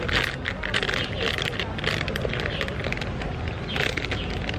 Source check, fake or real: real